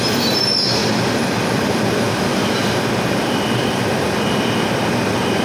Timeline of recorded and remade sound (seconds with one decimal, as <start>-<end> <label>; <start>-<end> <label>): 0.0-0.8 recorded; 0.8-4.0 remade; 4.0-5.4 recorded